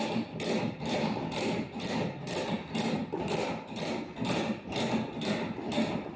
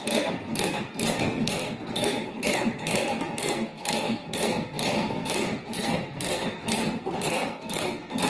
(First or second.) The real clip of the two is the first